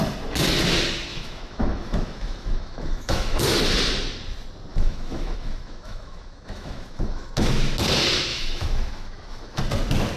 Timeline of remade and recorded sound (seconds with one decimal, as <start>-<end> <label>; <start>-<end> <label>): 0.0-1.1 recorded; 1.1-3.4 remade; 3.4-4.7 recorded; 4.7-7.3 remade; 7.3-8.3 recorded; 8.3-9.6 remade; 9.6-10.2 recorded